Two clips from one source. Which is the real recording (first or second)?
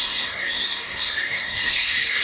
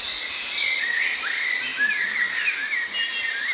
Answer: second